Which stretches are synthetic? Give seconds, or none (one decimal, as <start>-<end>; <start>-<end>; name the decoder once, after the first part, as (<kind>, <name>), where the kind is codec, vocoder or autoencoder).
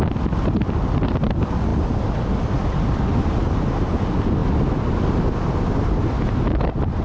none